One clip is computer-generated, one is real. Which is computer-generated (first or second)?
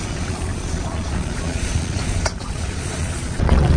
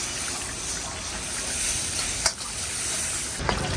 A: first